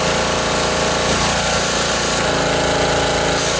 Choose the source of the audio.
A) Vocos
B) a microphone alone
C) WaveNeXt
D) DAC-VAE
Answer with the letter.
B